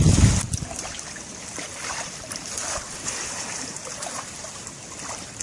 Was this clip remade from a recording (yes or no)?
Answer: no